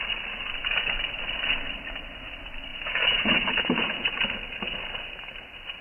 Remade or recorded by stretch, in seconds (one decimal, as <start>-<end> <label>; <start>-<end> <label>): 0.0-0.6 recorded; 0.6-1.1 remade; 1.1-2.7 recorded; 2.7-4.2 remade; 4.2-5.8 recorded